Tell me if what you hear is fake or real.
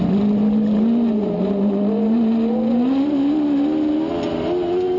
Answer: real